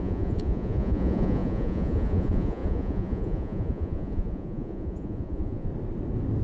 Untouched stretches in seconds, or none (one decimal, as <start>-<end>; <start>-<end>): 5.7-6.4

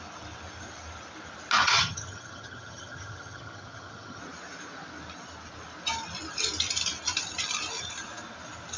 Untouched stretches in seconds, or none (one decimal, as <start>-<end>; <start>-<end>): 0.0-1.6; 4.2-8.8

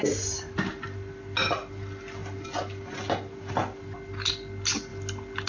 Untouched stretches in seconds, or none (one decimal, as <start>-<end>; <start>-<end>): 0.0-5.5

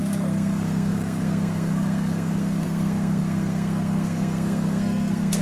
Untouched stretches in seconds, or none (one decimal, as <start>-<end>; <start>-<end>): none